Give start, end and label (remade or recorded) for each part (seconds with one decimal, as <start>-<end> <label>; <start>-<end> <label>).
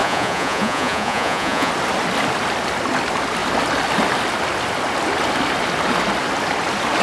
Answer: 0.0-1.7 remade; 1.7-7.0 recorded